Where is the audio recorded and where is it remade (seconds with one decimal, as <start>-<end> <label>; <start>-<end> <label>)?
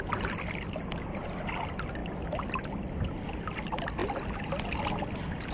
0.0-5.5 recorded